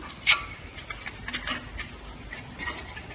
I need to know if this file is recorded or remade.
recorded